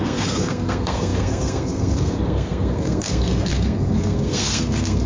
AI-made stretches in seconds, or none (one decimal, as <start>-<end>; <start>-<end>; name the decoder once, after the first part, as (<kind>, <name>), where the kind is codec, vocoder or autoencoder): 0.0-5.1 (codec, SNAC)